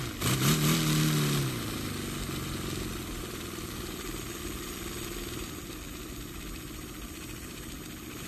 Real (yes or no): yes